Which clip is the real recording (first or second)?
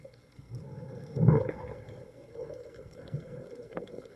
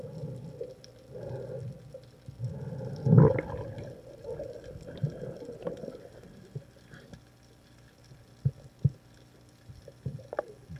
second